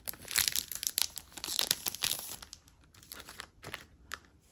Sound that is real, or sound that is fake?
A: fake